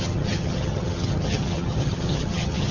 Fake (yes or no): yes